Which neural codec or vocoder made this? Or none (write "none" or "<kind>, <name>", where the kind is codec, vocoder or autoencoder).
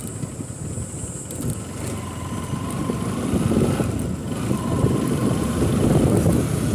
none